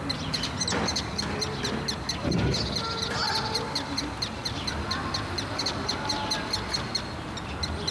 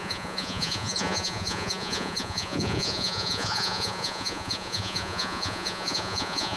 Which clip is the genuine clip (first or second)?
first